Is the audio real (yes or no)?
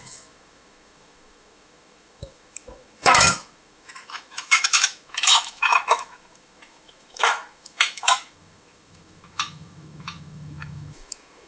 no